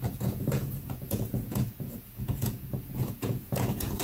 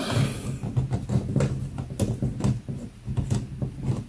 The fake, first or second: first